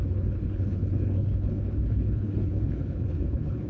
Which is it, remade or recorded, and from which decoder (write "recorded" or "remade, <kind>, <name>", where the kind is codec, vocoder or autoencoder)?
remade, codec, HILCodec